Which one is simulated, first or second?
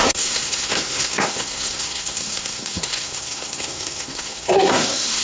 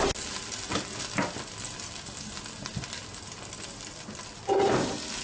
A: first